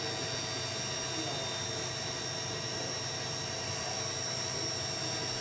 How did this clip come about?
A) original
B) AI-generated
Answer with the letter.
A